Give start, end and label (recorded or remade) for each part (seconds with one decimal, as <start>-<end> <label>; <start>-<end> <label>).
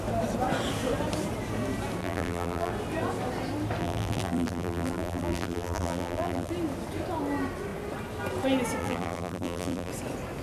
0.0-2.0 recorded; 2.0-2.7 remade; 2.7-3.8 recorded; 3.8-6.5 remade; 6.5-8.8 recorded; 8.8-9.9 remade; 9.9-10.4 recorded